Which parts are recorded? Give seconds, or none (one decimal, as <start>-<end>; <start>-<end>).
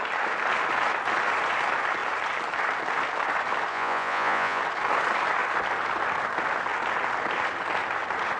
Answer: 0.0-3.7; 4.6-8.4